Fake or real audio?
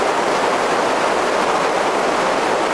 real